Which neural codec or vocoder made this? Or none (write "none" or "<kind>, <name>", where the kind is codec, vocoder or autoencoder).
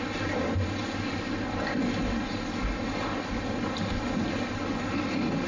none